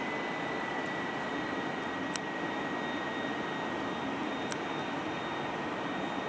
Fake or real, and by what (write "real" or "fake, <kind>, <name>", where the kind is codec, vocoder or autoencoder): real